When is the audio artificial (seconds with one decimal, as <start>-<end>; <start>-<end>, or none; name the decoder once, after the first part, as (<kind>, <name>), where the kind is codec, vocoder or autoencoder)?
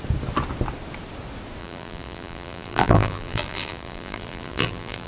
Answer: 1.6-5.1 (vocoder, BigVGAN v2)